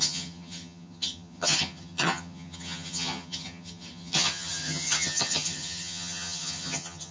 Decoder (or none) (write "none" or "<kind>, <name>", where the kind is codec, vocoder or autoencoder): vocoder, HiFi-GAN